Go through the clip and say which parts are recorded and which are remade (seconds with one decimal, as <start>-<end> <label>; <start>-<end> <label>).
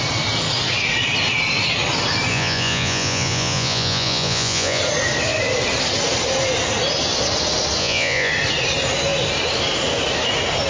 0.0-2.3 recorded; 2.3-4.8 remade; 4.8-7.8 recorded; 7.8-8.3 remade; 8.3-10.7 recorded